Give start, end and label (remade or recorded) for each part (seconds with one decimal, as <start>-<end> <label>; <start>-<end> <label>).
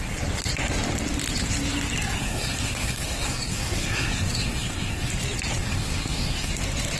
0.0-2.2 recorded; 2.2-5.1 remade; 5.1-5.6 recorded; 5.6-6.5 remade; 6.5-7.0 recorded